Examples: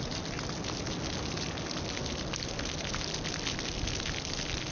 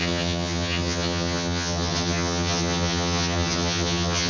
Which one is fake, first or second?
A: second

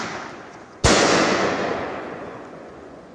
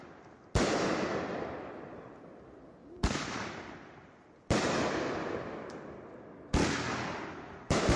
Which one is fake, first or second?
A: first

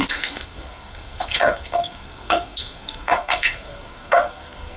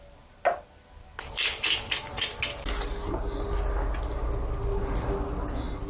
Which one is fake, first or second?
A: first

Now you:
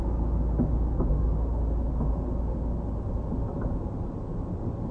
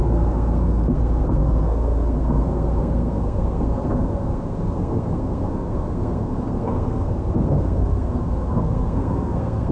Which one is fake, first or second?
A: second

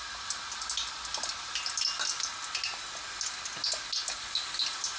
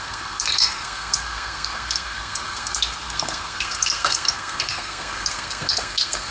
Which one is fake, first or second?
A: second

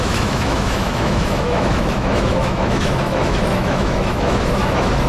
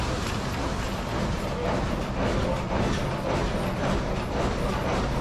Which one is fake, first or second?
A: first